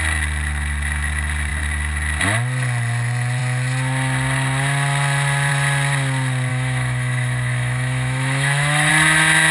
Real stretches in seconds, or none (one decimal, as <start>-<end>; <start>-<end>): 0.0-6.5; 8.9-9.5

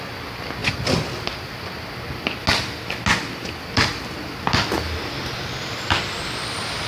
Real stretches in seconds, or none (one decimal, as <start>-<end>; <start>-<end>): 0.0-6.9

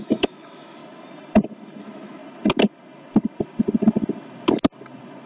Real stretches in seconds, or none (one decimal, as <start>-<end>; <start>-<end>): 0.8-1.8; 2.2-5.3

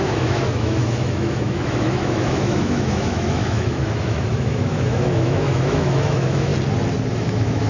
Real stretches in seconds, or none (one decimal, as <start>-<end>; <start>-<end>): 6.5-7.1

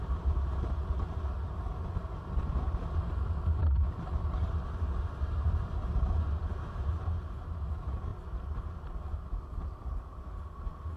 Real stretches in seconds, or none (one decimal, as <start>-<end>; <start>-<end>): 0.0-11.0

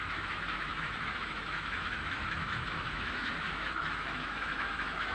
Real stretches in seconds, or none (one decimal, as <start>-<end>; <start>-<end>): none